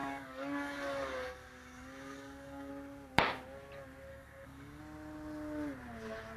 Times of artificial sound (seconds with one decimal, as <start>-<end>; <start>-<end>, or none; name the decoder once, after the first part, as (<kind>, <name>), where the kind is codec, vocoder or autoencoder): 0.0-2.7 (codec, DAC); 4.1-4.8

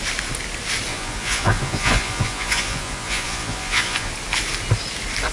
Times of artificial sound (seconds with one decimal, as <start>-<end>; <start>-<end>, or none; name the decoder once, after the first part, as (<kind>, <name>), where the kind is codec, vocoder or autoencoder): 0.9-4.1 (vocoder, Vocos)

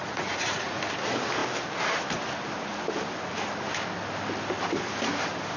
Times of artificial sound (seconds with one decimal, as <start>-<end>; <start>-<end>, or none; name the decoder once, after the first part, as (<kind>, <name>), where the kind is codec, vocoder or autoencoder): 0.0-0.8 (vocoder, Vocos)

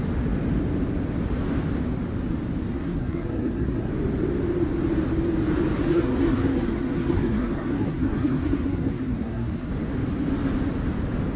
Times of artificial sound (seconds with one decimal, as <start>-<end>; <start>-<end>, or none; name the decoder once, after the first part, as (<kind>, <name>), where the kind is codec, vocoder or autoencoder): 2.7-3.9 (codec, SNAC); 5.9-9.7

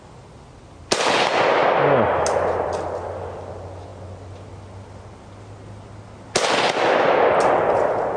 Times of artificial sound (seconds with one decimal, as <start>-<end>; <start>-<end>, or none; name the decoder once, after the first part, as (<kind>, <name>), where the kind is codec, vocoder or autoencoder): none

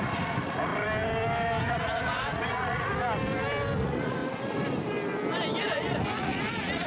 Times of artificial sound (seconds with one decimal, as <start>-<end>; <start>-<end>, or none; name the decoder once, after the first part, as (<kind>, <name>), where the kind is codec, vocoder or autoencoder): 0.0-0.7 (vocoder, Vocos); 1.7-2.9; 3.8-4.2; 5.6-6.9